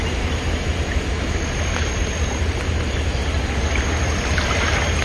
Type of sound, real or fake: real